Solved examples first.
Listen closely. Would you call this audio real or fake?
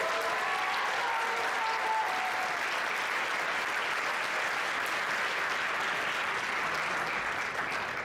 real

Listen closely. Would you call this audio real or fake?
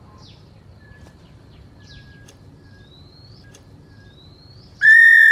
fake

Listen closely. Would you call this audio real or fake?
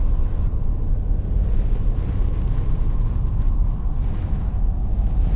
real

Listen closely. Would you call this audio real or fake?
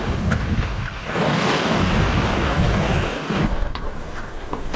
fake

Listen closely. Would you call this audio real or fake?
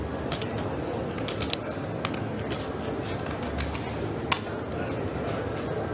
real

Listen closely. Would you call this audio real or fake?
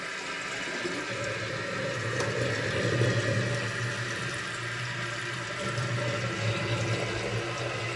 real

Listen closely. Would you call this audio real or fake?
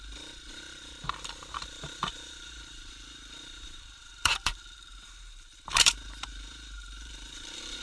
fake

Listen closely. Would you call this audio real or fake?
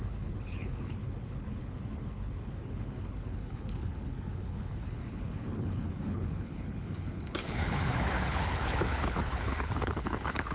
fake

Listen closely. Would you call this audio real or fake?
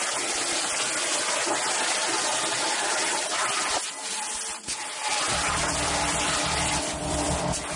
real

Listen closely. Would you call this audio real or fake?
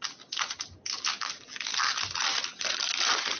real